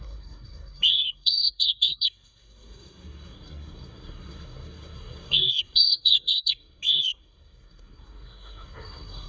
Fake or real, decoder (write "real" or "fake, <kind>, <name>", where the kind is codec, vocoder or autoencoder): fake, codec, SNAC